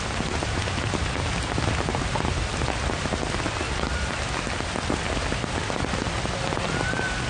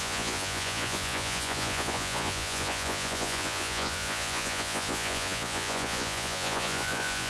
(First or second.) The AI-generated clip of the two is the second